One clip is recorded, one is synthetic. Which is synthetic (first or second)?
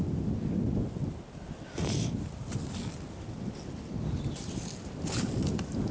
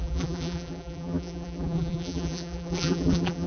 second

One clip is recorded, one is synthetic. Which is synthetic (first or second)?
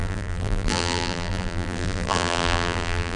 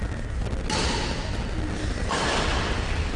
first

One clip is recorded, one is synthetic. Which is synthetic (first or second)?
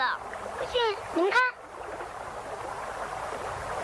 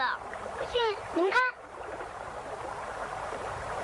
second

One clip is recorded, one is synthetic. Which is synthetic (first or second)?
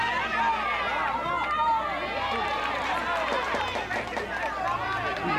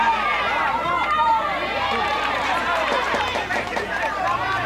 second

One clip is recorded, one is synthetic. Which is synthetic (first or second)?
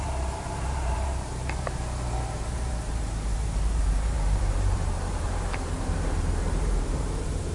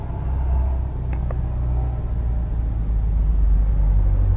first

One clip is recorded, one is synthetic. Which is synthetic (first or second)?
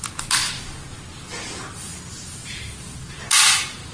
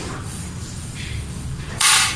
second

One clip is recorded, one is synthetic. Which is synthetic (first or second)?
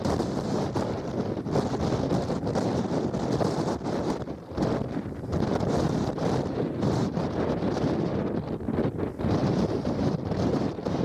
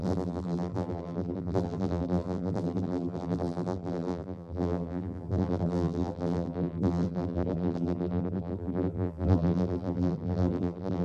second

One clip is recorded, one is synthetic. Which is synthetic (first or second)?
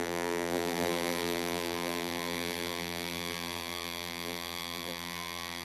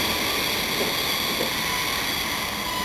first